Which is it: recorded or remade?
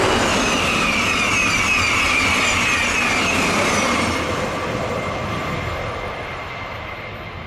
recorded